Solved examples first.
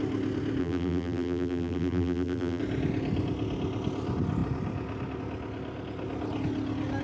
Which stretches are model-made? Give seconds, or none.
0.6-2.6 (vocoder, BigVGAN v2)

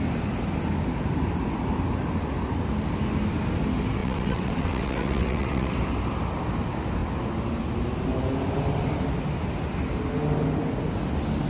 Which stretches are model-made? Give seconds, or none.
4.0-5.7 (vocoder, WaveNeXt)

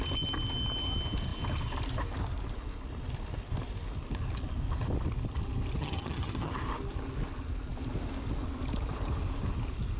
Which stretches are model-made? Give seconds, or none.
5.8-6.5 (vocoder, HiFi-GAN)